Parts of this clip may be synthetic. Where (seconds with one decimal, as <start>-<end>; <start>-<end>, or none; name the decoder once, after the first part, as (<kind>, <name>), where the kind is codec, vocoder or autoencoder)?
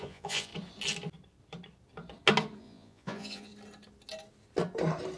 0.0-0.5 (vocoder, Vocos); 2.6-3.5